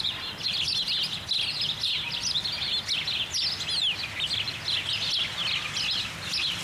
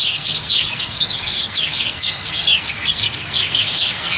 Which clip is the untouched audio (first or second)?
first